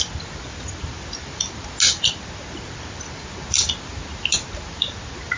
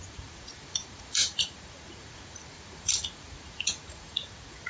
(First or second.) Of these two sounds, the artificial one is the second